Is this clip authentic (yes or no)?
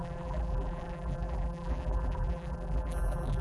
no